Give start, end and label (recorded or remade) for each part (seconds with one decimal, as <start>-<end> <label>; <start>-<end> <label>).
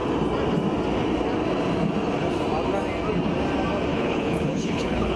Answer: 0.0-3.9 recorded; 3.9-5.2 remade